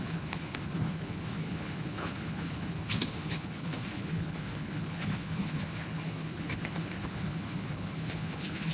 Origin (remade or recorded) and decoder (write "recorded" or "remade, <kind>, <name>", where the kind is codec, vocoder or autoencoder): remade, codec, HILCodec